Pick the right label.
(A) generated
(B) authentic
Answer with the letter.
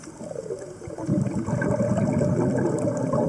B